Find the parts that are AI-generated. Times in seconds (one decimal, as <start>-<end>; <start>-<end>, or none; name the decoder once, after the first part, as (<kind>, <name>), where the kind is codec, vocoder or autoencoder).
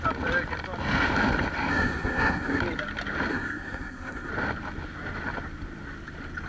1.7-2.6 (codec, SNAC); 3.3-4.3